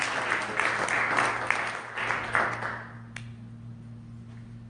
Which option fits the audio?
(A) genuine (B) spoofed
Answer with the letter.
A